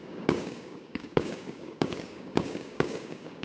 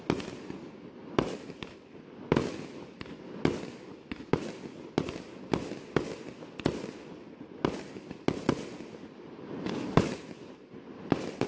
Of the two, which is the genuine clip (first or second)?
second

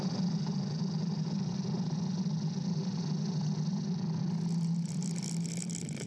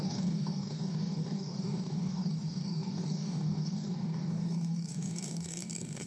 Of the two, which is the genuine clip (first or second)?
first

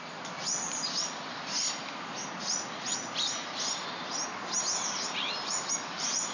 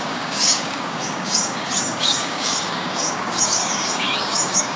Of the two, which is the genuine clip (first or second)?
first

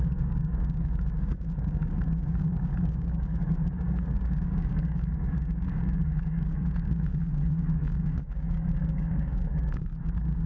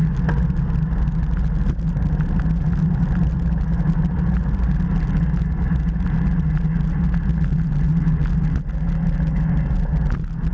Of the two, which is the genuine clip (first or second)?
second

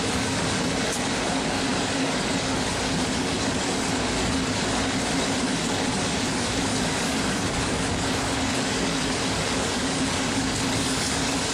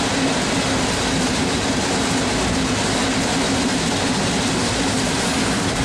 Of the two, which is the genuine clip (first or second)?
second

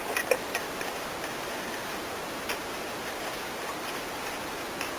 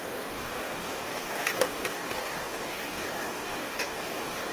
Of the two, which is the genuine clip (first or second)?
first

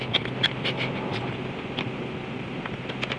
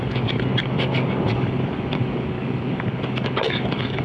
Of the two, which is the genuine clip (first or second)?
first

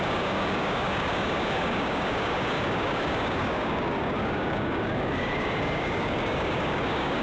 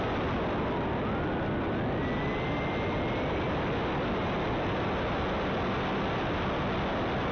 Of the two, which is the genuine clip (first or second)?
second